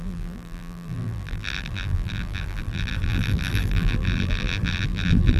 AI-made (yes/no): yes